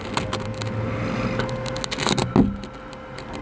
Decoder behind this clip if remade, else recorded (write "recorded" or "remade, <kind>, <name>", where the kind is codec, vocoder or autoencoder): recorded